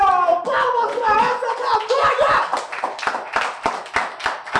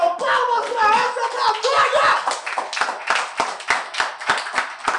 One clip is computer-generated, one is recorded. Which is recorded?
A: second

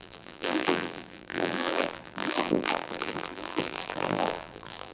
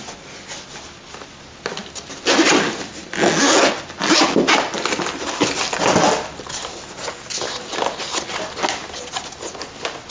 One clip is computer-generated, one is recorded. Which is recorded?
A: second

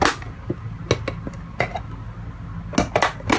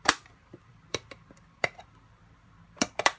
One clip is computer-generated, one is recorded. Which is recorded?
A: first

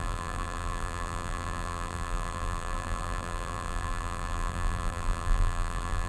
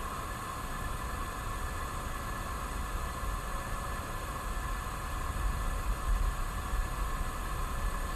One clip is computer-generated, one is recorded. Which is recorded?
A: second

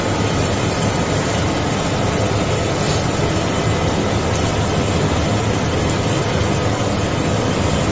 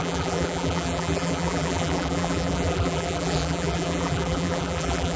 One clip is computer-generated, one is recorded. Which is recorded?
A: first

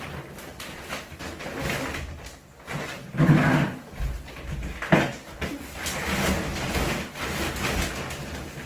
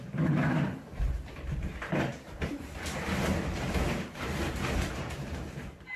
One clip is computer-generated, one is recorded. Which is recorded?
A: first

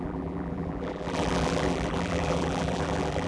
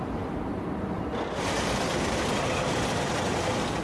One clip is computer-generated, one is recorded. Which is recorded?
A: second